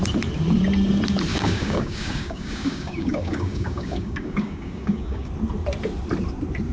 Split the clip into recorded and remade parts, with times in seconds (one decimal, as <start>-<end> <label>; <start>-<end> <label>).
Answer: 0.0-1.3 recorded; 1.3-5.3 remade; 5.3-6.7 recorded